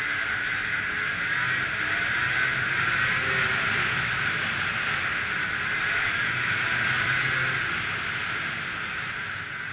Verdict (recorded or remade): recorded